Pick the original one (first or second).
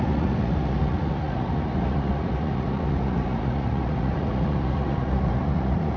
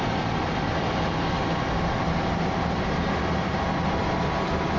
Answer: second